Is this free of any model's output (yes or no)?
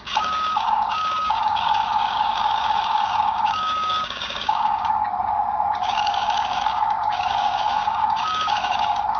no